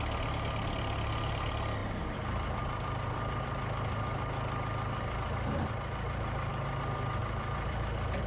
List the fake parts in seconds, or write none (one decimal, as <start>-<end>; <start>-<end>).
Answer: none